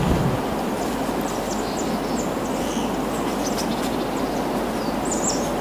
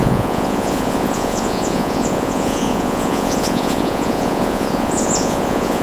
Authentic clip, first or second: first